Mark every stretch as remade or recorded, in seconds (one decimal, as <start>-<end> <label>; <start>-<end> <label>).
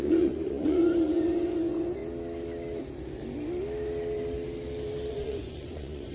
0.0-2.0 remade; 2.0-5.1 recorded; 5.1-6.1 remade